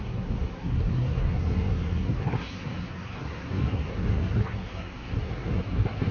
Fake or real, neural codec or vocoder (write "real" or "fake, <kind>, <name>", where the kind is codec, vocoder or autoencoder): fake, codec, SNAC